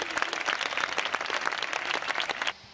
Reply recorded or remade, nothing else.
recorded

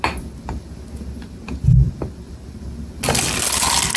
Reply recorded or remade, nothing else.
recorded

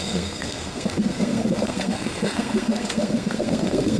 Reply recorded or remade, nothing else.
remade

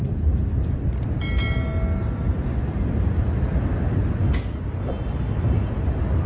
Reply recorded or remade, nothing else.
recorded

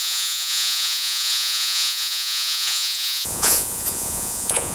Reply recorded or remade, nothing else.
remade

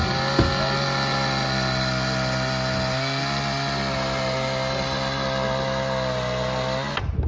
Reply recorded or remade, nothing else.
recorded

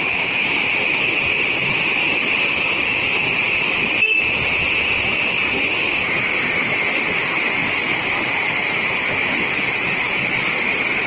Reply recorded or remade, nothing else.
recorded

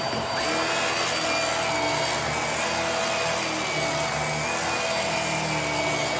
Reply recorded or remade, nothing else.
recorded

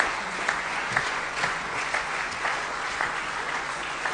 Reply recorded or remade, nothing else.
remade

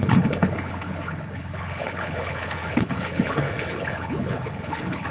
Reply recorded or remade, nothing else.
remade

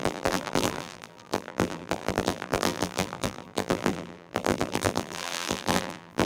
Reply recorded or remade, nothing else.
remade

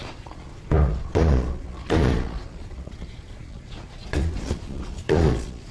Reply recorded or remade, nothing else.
remade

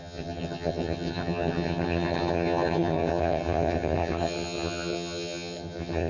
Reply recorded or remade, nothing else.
remade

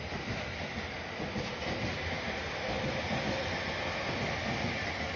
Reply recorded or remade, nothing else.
recorded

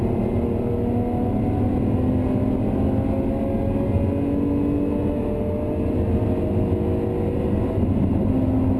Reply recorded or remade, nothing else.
recorded